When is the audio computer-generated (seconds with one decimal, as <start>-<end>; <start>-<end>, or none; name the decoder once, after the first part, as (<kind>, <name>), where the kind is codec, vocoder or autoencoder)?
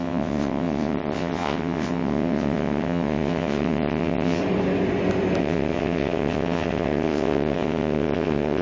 0.0-4.4 (vocoder, WaveNeXt); 5.4-8.6